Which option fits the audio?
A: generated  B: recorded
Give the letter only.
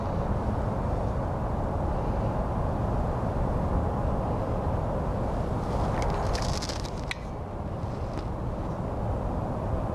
B